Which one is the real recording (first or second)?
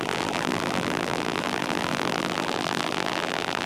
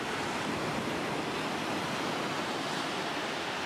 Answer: second